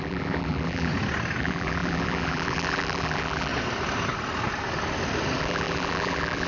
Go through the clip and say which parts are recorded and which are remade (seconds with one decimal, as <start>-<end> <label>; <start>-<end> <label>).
0.0-0.9 remade; 0.9-1.4 recorded; 1.4-3.5 remade; 3.5-5.4 recorded; 5.4-6.5 remade